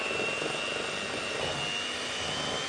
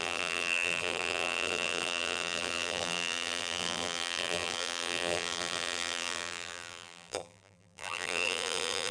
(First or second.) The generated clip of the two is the second